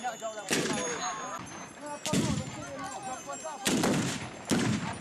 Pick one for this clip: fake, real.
real